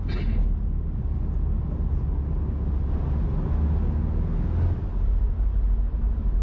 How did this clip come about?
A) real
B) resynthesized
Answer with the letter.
A